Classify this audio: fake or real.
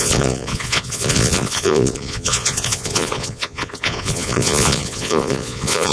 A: fake